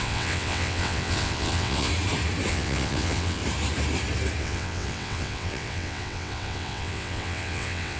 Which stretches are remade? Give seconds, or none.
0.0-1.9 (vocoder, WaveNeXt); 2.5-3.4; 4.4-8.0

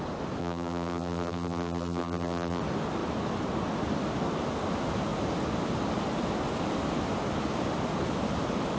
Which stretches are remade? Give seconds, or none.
0.4-2.6 (vocoder, BigVGAN v2)